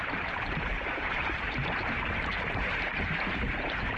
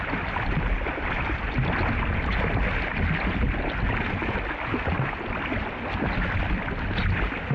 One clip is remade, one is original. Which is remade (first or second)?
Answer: first